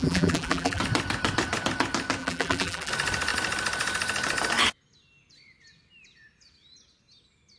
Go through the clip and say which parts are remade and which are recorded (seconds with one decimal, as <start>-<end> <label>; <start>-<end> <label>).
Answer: 0.0-0.8 remade; 0.8-2.2 recorded; 2.2-2.9 remade; 2.9-7.6 recorded